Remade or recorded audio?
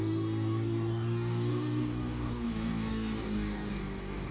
remade